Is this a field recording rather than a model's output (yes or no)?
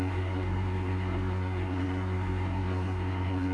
no